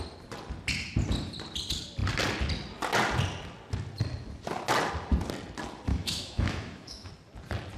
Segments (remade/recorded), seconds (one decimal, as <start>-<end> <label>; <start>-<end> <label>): 0.0-5.9 recorded; 5.9-7.1 remade; 7.1-7.8 recorded